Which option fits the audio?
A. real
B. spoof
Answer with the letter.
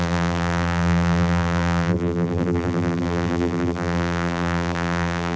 B